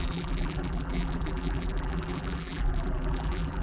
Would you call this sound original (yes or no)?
no